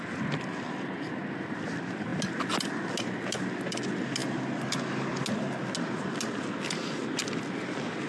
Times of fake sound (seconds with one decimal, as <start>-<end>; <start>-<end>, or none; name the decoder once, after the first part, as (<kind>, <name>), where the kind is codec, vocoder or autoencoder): none